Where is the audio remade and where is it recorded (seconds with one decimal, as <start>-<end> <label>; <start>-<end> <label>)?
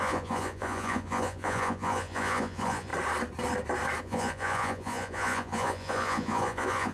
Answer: 0.0-2.9 remade; 2.9-4.0 recorded; 4.0-6.9 remade